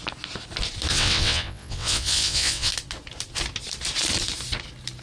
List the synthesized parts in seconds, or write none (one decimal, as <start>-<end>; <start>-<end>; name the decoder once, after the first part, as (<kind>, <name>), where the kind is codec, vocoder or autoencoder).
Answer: 0.9-2.7 (vocoder, WaveNeXt)